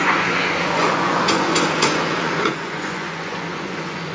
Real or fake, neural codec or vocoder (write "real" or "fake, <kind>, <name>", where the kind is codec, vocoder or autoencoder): fake, vocoder, Vocos